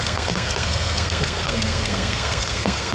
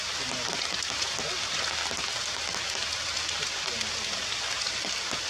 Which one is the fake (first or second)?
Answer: first